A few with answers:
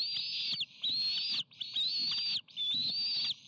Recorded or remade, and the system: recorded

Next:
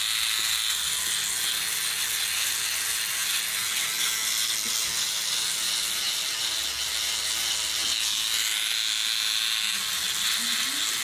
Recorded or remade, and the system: recorded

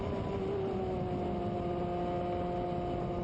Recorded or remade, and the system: recorded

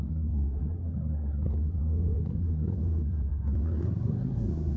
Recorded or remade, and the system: remade, codec, SNAC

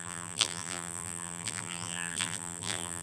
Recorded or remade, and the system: remade, vocoder, BigVGAN v2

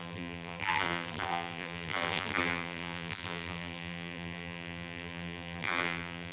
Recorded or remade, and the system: remade, vocoder, BigVGAN v2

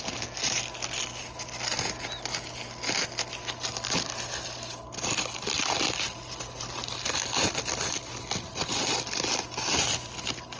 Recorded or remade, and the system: recorded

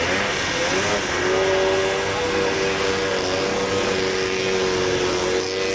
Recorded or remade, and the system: recorded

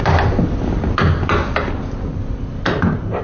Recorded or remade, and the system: recorded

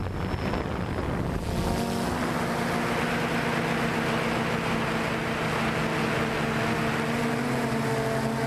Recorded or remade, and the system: recorded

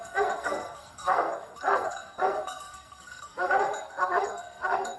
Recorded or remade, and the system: remade, codec, SNAC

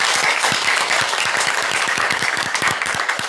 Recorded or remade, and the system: remade, codec, DAC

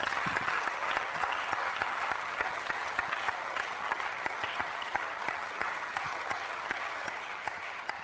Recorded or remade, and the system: remade, vocoder, HiFi-GAN